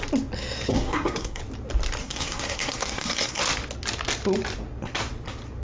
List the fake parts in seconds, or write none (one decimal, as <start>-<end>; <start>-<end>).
0.7-1.4; 2.0-3.4